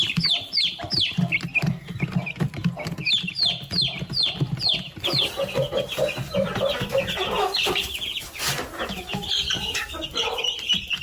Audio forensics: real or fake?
fake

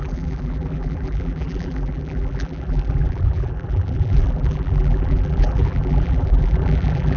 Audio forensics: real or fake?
fake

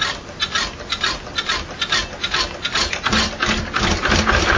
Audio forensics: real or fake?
real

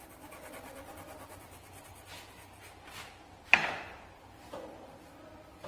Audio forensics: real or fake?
real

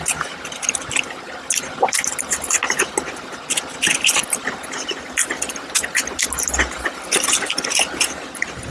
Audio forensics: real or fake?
real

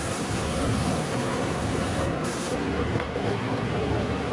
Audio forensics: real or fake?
fake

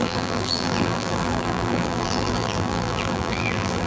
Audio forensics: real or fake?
fake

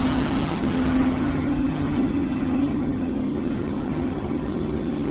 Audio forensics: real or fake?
fake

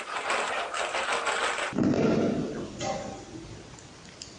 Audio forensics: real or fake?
real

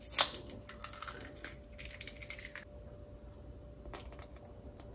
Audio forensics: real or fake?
real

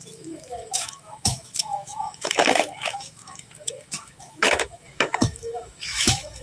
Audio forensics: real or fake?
fake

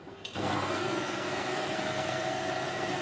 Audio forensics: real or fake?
fake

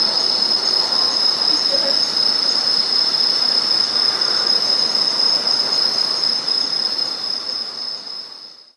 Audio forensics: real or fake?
real